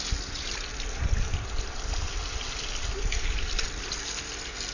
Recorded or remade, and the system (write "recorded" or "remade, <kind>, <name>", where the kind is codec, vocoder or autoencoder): recorded